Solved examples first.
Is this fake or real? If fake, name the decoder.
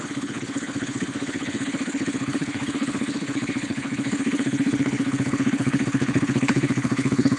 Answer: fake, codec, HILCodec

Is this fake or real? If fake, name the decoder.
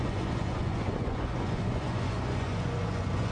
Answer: fake, vocoder, Vocos